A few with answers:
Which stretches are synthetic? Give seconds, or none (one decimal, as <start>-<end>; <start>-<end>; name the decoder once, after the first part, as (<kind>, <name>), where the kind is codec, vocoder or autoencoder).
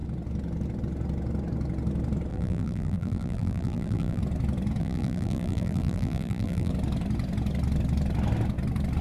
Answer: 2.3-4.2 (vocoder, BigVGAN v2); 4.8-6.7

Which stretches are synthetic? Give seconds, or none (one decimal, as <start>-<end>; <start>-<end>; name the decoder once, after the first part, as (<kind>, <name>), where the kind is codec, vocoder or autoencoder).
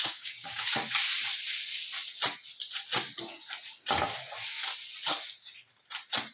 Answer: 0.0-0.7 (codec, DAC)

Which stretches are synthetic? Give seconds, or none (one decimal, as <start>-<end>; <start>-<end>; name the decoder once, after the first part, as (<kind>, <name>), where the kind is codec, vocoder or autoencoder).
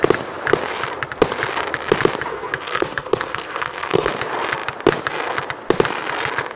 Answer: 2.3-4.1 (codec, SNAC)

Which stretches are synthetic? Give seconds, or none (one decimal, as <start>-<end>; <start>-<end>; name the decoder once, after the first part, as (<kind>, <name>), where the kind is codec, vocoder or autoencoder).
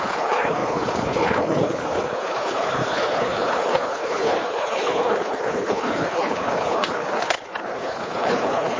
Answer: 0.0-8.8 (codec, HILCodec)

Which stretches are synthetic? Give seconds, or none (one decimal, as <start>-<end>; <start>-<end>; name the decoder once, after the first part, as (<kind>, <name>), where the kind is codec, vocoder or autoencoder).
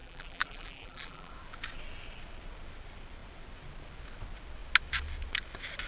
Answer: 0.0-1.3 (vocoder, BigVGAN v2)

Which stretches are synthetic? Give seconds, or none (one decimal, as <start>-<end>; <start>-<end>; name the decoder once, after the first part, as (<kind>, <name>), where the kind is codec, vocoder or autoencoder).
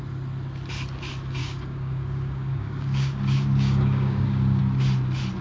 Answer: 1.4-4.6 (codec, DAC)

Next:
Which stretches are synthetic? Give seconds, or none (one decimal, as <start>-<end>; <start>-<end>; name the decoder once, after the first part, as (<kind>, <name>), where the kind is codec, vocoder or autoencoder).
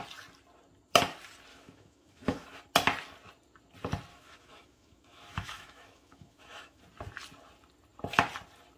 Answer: 1.5-2.6 (autoencoder, DAC-VAE); 4.1-6.8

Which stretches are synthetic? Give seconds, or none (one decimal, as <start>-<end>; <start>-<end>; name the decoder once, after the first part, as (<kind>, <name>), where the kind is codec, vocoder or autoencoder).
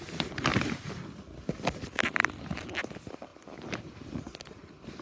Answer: 0.0-5.0 (vocoder, BigVGAN v2)